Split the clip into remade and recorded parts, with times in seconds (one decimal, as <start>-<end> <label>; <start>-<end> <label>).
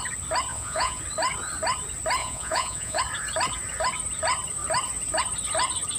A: 0.0-0.5 recorded; 0.5-1.0 remade; 1.0-2.2 recorded; 2.2-3.0 remade; 3.0-6.0 recorded